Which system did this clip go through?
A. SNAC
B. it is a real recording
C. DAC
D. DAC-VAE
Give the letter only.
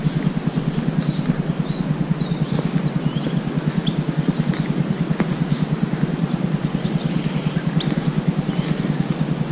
B